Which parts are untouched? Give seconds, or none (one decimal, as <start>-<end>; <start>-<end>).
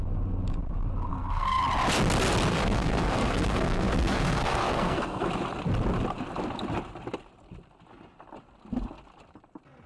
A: 0.0-1.1; 1.6-2.5; 5.3-9.9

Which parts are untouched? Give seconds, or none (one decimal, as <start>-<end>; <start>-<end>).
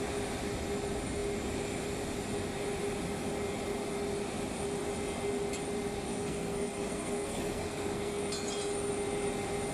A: 0.0-6.1; 8.2-9.7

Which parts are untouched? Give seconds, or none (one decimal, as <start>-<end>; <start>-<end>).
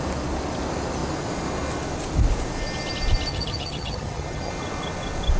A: 0.0-3.3; 4.5-5.4